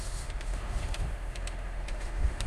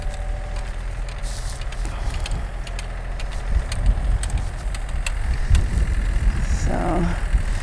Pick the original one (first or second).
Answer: second